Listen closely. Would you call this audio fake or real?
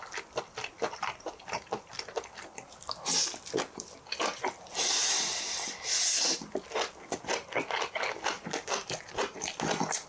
real